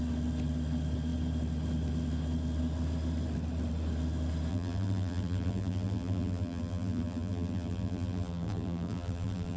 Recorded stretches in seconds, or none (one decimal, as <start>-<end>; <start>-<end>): 0.0-4.5